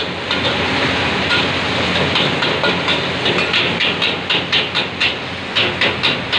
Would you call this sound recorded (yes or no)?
yes